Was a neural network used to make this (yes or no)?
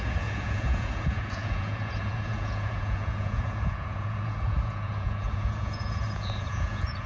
yes